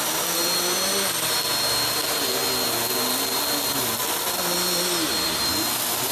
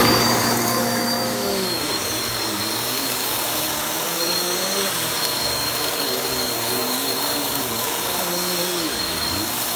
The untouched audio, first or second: first